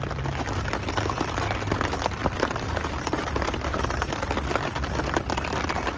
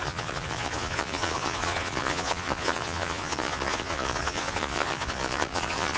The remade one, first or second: second